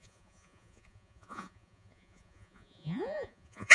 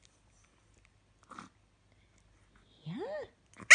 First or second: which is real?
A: second